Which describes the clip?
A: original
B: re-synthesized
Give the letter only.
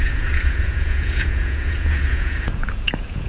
B